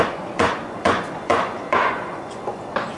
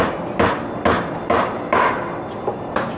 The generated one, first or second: first